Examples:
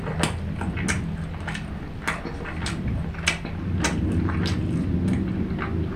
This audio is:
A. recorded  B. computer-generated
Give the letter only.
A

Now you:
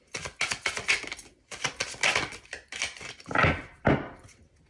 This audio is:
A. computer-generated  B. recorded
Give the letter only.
B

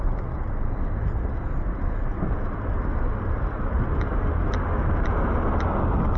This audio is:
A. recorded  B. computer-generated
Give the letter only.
A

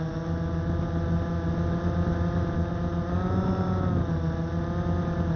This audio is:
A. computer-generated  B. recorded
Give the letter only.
B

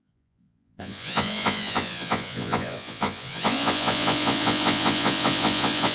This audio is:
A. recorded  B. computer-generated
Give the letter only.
B